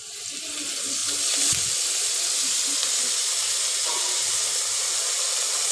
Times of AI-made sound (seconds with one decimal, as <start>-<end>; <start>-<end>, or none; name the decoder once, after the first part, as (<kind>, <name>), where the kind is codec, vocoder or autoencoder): none